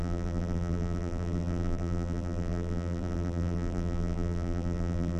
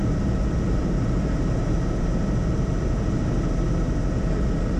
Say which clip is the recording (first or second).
second